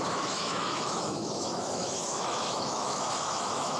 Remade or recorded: remade